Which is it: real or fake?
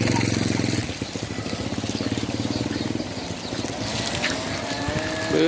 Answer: real